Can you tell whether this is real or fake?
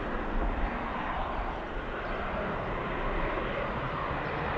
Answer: real